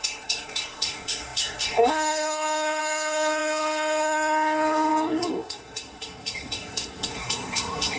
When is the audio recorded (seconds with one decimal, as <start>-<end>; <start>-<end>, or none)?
none